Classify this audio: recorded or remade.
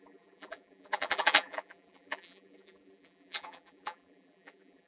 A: remade